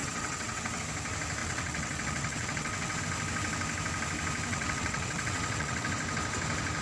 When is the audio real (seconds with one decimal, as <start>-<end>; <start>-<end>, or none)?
0.8-1.4; 3.0-4.5; 5.9-6.8